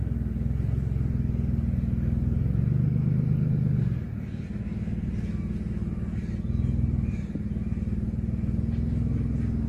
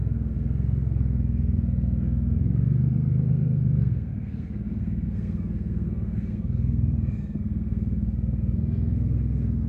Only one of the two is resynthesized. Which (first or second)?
second